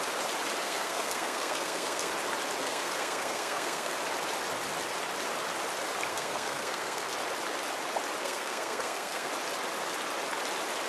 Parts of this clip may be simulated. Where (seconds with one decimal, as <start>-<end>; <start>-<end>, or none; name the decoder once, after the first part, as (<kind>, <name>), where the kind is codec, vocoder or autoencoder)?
0.6-2.1 (codec, SNAC); 2.6-4.0; 6.1-7.1; 8.2-9.3